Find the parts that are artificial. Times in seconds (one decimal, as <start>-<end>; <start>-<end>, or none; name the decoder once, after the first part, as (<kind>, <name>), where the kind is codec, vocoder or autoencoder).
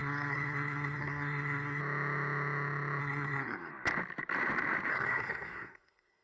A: 0.0-1.8 (codec, SNAC); 3.0-3.7; 4.9-6.2